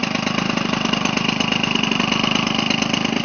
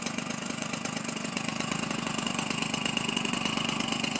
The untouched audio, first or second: first